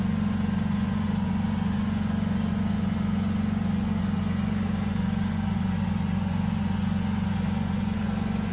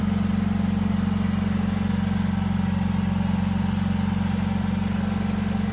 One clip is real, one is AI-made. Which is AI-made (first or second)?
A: first